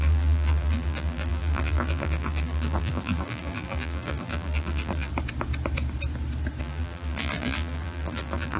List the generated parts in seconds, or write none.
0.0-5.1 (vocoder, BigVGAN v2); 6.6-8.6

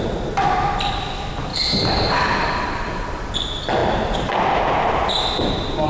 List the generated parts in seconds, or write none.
1.5-3.0 (vocoder, BigVGAN v2)